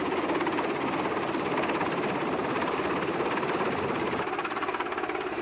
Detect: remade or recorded recorded